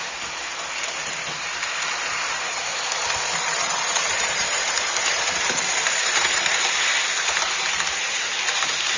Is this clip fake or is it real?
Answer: fake